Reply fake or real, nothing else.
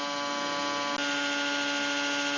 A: real